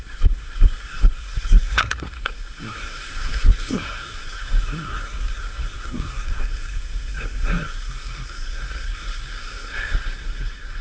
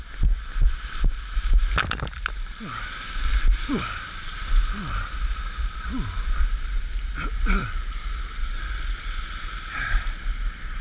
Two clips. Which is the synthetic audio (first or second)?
first